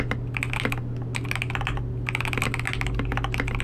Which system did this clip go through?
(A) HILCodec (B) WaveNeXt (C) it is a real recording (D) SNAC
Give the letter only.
C